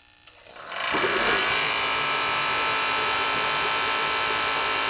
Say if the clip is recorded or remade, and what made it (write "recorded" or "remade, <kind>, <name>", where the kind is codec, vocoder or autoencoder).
remade, vocoder, BigVGAN v2